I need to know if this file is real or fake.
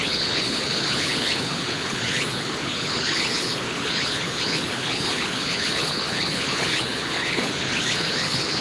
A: fake